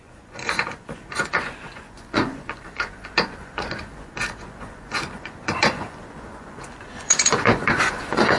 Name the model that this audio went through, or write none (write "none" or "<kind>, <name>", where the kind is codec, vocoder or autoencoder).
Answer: vocoder, Vocos